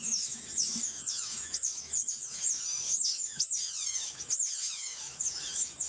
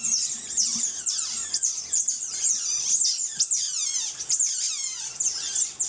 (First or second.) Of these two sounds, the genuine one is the second